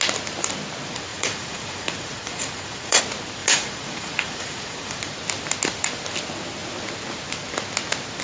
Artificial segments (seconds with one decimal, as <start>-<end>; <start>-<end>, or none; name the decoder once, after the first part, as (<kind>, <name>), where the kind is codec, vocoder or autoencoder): 1.1-3.0 (vocoder, Vocos); 3.4-5.1